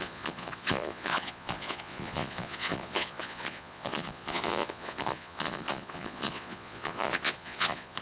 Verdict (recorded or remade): remade